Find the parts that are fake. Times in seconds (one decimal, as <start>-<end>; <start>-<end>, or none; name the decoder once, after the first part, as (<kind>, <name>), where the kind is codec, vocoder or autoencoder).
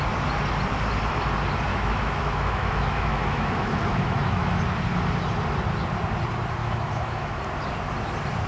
1.7-4.6 (autoencoder, DAC-VAE); 6.6-7.4